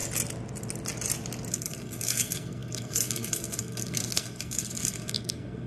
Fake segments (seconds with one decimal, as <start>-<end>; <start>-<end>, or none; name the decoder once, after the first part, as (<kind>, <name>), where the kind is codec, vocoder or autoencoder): 1.5-5.7 (codec, SNAC)